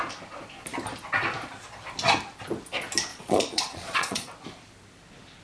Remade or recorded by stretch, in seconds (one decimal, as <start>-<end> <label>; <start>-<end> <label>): 0.0-3.1 recorded; 3.1-4.3 remade; 4.3-5.4 recorded